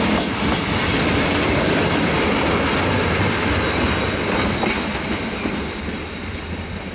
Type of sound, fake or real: real